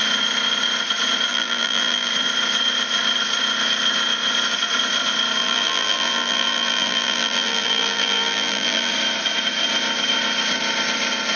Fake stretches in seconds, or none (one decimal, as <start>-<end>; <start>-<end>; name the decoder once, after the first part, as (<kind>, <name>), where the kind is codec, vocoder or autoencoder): 1.3-2.1 (vocoder, BigVGAN v2); 5.4-8.9